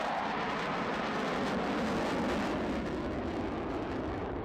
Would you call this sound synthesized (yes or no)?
no